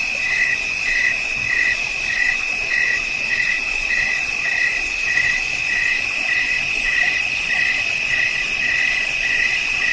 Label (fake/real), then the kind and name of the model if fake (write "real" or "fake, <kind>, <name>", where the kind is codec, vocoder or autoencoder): fake, vocoder, Vocos